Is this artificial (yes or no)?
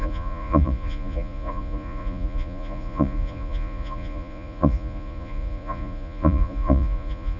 yes